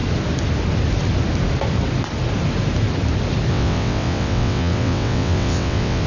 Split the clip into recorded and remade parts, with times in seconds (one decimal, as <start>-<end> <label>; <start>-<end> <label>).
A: 0.0-3.5 recorded; 3.5-6.1 remade